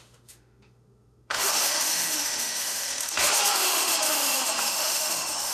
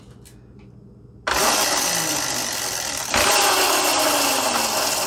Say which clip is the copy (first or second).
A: first